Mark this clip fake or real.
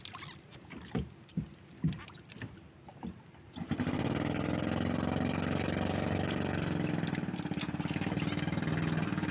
real